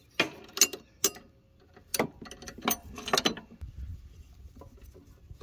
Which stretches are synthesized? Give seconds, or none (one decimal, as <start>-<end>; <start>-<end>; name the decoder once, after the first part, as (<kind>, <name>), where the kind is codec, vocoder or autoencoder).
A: none

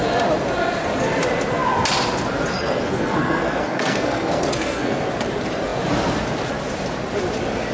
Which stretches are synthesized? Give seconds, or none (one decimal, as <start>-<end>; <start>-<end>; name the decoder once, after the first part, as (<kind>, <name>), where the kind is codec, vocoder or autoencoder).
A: 2.5-5.1 (codec, SNAC)

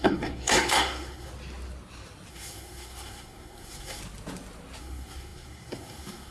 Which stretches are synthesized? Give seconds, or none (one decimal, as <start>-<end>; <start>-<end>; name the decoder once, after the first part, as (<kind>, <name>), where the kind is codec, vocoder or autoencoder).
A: 0.0-1.3 (codec, SNAC); 2.3-4.0; 4.8-6.3

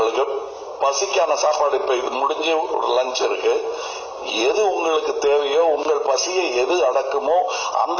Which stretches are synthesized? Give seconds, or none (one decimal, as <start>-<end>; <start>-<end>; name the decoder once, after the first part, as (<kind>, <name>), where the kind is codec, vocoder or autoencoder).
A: none

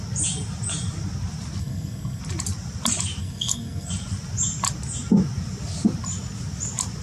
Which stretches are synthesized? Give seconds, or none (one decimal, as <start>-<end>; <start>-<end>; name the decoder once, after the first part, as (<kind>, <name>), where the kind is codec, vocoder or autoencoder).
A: 1.6-2.2 (codec, SNAC); 3.2-3.9